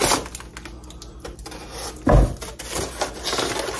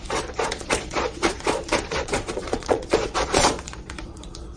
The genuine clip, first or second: first